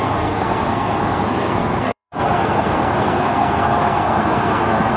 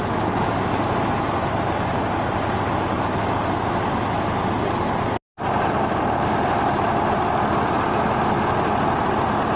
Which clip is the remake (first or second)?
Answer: first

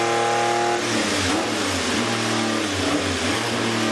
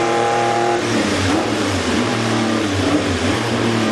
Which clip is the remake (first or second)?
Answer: second